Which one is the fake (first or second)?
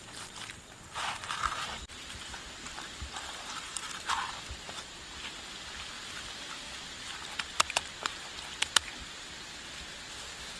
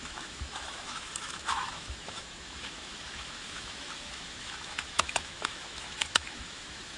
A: second